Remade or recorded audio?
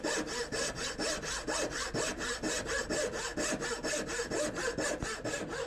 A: recorded